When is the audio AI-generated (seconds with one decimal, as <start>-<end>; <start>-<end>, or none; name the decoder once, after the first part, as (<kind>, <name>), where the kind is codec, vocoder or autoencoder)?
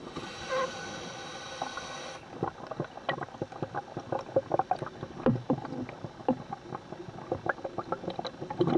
none